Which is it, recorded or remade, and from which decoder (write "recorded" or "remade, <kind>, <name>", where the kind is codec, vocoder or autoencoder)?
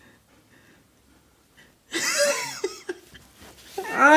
recorded